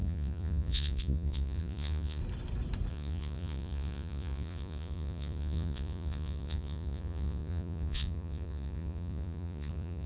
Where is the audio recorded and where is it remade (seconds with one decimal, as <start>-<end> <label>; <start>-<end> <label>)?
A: 0.0-2.2 remade; 2.2-2.9 recorded; 2.9-10.1 remade